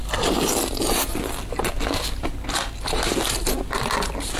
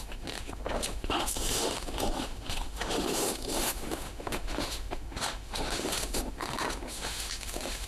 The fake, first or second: second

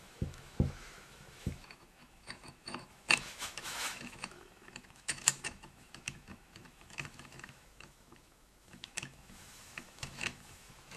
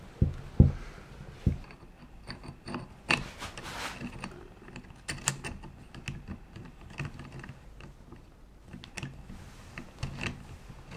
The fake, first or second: first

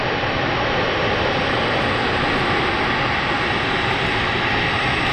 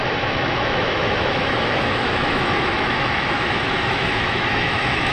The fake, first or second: second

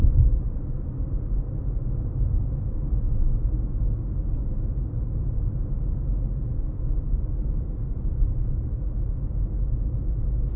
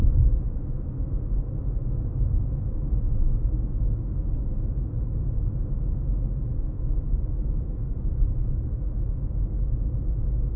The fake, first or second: second